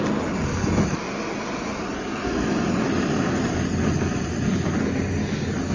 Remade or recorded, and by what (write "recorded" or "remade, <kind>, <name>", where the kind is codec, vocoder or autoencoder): recorded